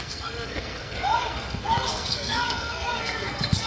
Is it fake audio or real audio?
fake